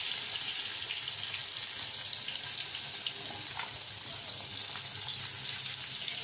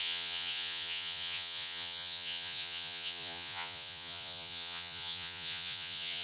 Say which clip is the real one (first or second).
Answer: first